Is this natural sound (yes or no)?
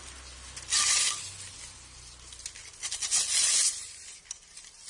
yes